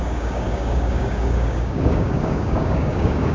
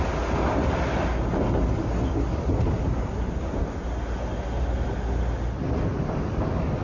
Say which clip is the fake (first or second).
first